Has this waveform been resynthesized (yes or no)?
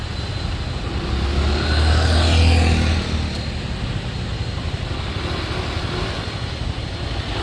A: no